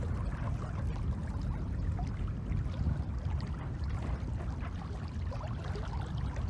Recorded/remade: recorded